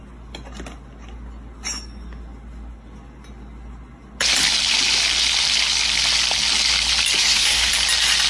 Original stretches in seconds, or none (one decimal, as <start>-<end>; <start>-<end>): 0.0-7.2; 7.7-8.3